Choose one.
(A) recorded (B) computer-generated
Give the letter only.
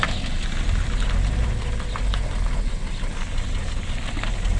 A